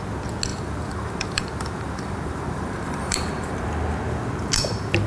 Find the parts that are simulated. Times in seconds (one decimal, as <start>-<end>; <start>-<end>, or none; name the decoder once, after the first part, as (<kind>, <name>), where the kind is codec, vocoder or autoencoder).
0.5-3.6 (vocoder, BigVGAN v2)